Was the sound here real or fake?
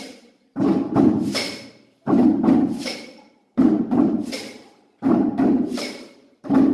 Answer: fake